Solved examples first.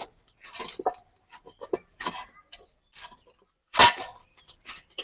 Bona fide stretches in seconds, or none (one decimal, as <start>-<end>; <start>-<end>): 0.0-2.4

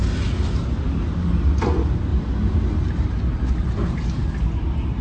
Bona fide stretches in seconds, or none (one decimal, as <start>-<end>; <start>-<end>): 0.0-5.0

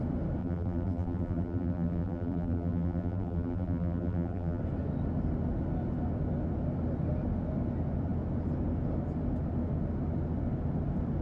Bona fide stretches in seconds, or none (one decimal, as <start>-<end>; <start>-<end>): 0.0-0.4; 4.6-11.2